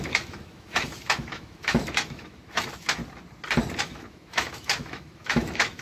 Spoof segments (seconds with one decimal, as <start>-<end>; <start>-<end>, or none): 0.0-3.0; 3.8-5.8

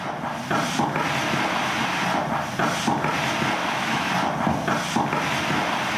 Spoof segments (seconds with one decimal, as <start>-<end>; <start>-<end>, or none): 3.6-4.1